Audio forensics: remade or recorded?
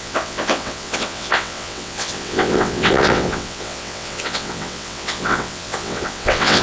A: remade